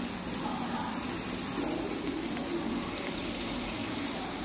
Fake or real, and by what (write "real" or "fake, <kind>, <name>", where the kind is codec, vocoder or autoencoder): fake, vocoder, BigVGAN v2